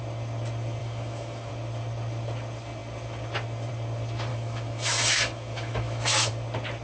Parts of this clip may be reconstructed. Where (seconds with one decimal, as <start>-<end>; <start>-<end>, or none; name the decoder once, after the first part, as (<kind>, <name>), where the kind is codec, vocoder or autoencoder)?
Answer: 0.8-1.5 (autoencoder, DAC-VAE); 4.3-6.3